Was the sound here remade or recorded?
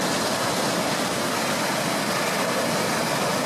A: recorded